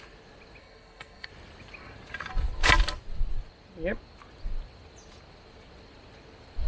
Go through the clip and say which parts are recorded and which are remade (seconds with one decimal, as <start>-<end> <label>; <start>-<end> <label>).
0.0-0.6 recorded; 0.6-1.3 remade; 1.3-6.7 recorded